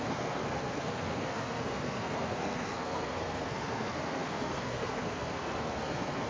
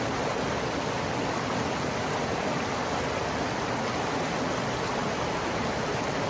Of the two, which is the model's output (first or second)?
first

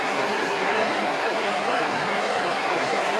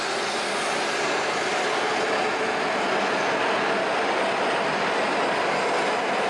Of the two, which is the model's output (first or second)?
first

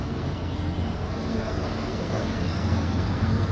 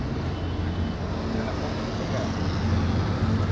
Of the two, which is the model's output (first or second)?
first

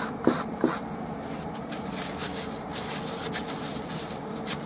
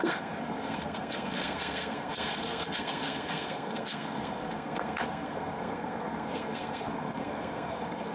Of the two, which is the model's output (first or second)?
second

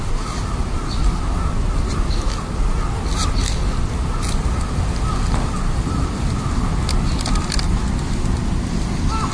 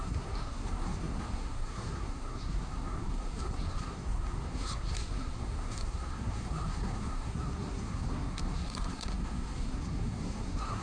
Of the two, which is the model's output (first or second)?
second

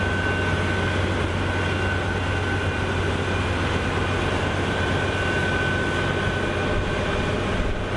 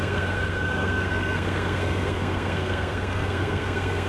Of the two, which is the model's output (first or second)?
second